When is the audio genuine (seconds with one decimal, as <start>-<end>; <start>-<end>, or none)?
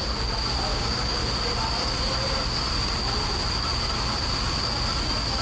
0.0-0.7; 1.2-5.4